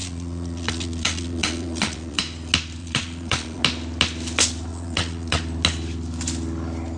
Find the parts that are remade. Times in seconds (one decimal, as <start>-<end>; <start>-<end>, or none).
0.0-2.2; 2.8-3.6; 4.7-5.4